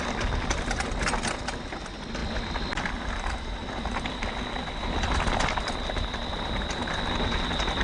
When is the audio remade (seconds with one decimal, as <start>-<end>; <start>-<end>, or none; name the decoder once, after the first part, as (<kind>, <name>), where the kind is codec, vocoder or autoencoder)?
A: none